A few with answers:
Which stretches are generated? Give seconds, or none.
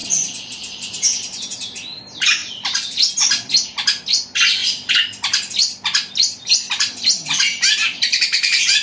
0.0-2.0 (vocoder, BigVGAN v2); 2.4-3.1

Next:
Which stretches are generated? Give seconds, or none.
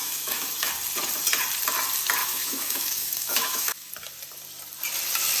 0.0-0.7 (autoencoder, DAC-VAE); 2.2-3.9